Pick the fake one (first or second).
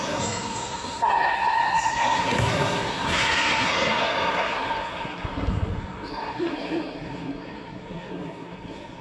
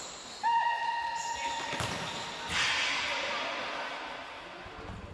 first